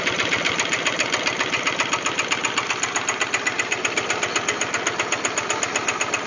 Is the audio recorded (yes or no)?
yes